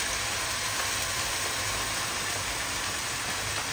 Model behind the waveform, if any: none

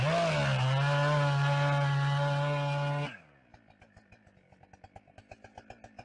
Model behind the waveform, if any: none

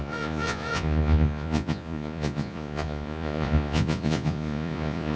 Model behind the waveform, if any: vocoder, Vocos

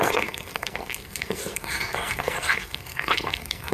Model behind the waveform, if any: codec, SNAC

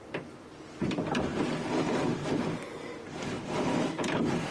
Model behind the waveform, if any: vocoder, BigVGAN v2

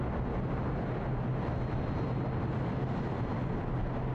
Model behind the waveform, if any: none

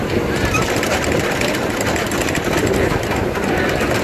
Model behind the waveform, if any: none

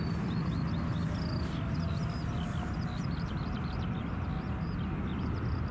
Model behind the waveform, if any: none